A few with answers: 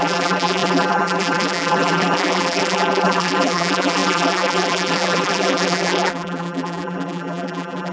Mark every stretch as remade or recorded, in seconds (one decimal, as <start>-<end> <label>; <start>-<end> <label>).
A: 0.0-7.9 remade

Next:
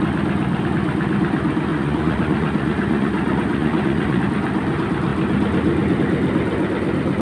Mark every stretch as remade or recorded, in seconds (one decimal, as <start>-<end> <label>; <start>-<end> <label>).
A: 0.0-1.7 recorded; 1.7-4.2 remade; 4.2-7.2 recorded

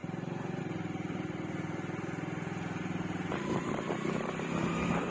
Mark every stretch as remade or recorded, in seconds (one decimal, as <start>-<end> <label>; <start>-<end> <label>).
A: 0.0-5.1 recorded

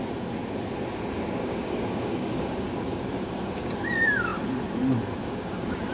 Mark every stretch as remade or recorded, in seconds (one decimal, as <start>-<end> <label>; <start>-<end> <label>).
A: 0.0-1.4 recorded; 1.4-3.7 remade; 3.7-5.2 recorded; 5.2-5.9 remade